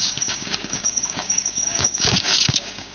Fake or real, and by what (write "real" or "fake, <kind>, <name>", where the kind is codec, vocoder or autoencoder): fake, codec, DAC